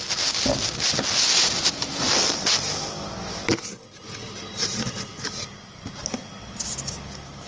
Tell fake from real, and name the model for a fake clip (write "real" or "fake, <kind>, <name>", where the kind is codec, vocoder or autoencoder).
real